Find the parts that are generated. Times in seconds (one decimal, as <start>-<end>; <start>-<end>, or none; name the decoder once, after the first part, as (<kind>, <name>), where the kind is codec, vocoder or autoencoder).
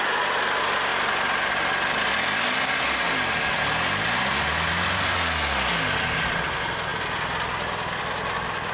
none